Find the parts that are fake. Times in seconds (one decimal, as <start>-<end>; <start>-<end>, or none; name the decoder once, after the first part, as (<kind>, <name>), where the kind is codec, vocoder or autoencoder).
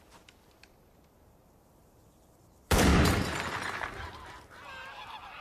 0.0-2.9 (vocoder, BigVGAN v2); 3.7-5.4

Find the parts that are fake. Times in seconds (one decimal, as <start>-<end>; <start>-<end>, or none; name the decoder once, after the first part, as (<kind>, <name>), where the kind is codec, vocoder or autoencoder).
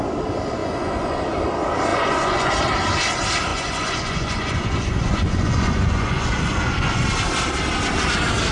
0.6-1.2 (vocoder, Vocos); 1.9-2.5; 3.5-7.1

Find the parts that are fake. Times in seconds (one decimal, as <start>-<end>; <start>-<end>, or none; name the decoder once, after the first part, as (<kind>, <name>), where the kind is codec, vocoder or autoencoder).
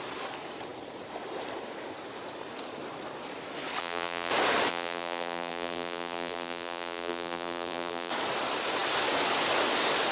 3.8-4.3 (vocoder, BigVGAN v2); 4.7-8.1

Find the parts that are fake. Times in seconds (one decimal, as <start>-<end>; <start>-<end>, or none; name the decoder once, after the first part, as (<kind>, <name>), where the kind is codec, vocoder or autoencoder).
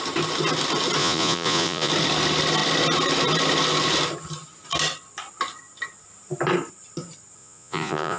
1.0-1.9 (vocoder, Vocos); 7.4-8.2